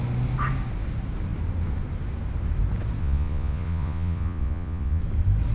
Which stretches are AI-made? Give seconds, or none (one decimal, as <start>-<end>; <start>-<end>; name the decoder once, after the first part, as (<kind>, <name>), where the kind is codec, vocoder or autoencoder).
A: 3.0-5.0 (vocoder, Vocos)